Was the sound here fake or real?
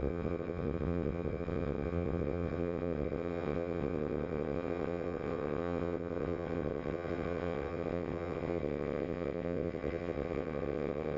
fake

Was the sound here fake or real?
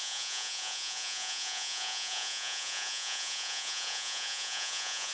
fake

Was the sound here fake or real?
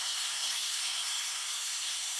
fake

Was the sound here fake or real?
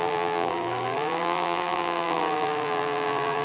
fake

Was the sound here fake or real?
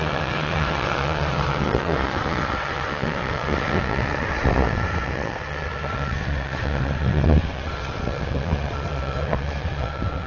fake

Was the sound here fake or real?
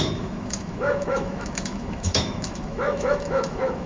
fake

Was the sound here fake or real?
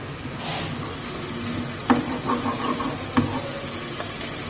real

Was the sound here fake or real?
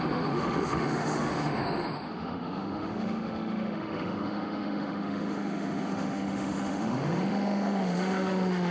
fake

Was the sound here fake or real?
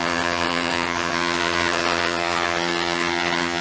fake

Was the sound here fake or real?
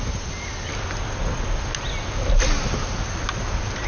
real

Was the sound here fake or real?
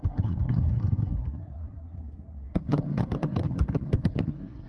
fake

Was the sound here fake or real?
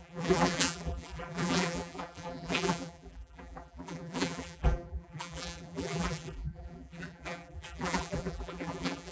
fake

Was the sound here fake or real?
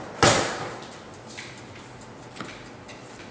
real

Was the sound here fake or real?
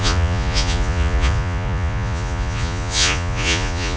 fake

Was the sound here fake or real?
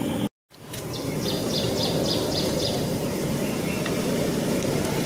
real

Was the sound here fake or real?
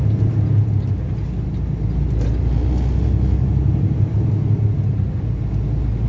real